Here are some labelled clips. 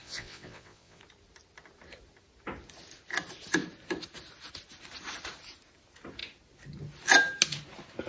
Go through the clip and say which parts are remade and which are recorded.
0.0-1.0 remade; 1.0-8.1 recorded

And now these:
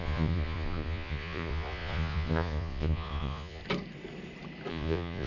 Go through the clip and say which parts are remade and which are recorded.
0.0-3.6 remade; 3.6-4.7 recorded; 4.7-5.3 remade

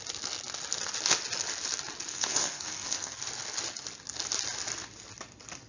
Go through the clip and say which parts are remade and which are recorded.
0.0-2.1 recorded; 2.1-3.2 remade; 3.2-5.7 recorded

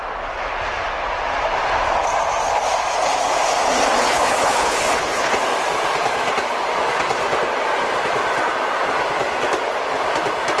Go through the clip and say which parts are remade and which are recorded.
0.0-4.0 recorded; 4.0-5.3 remade; 5.3-10.6 recorded

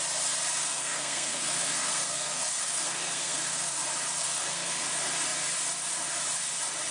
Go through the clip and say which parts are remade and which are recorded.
0.0-0.6 recorded; 0.6-3.8 remade; 3.8-4.2 recorded; 4.2-4.8 remade; 4.8-6.9 recorded

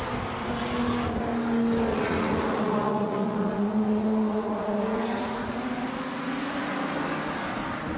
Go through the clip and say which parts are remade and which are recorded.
0.0-1.9 recorded; 1.9-6.7 remade; 6.7-8.0 recorded

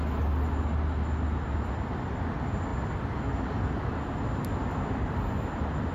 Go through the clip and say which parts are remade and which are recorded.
0.0-5.9 recorded